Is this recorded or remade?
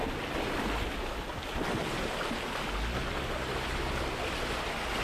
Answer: recorded